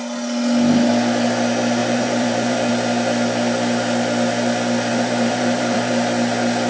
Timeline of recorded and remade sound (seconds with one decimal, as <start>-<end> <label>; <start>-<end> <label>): 0.0-1.8 recorded; 1.8-2.7 remade; 2.7-4.9 recorded; 4.9-5.9 remade; 5.9-6.7 recorded